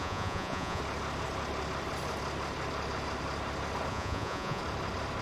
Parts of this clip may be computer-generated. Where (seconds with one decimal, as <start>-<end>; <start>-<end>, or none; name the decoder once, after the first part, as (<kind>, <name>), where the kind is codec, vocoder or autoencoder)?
0.0-0.8 (vocoder, Vocos); 3.9-4.6